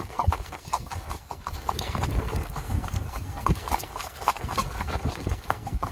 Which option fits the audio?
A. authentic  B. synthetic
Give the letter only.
B